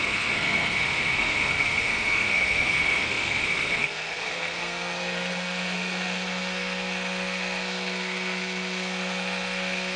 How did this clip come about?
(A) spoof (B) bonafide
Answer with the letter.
A